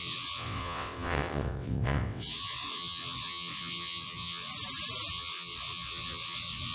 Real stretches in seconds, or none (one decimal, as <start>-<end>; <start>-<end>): 4.5-5.1